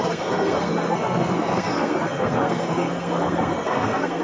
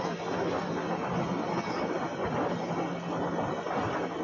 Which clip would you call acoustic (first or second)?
second